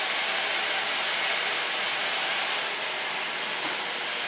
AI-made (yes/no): no